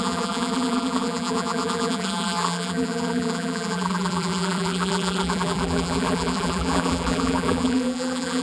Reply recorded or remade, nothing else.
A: remade